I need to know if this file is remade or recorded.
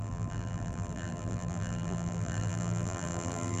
remade